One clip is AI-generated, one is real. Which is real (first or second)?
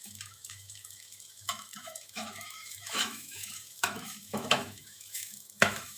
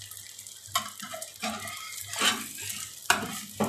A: second